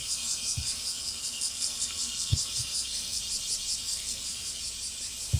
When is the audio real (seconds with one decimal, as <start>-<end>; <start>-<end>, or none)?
3.2-3.8; 4.6-5.4